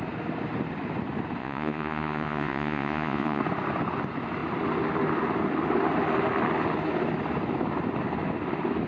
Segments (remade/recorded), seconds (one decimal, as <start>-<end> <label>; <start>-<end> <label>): 0.0-1.4 recorded; 1.4-3.4 remade; 3.4-8.9 recorded